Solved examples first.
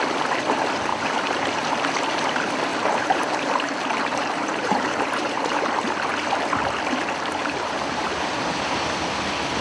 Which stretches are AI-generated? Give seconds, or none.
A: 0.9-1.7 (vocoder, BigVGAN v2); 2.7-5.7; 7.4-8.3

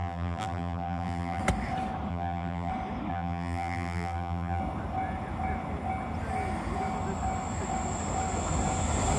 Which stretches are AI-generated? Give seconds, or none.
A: 0.0-1.4 (vocoder, BigVGAN v2); 2.1-2.7; 3.1-4.6

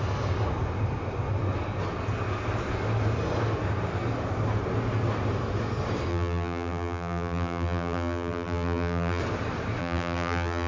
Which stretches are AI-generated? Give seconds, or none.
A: 6.1-9.2 (vocoder, BigVGAN v2); 9.8-10.7

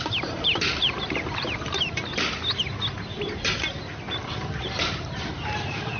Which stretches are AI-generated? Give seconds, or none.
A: 0.0-2.1 (vocoder, BigVGAN v2); 4.6-6.0